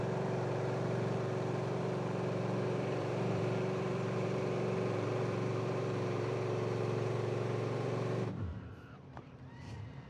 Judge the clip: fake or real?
fake